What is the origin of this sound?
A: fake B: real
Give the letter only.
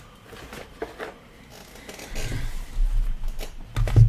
B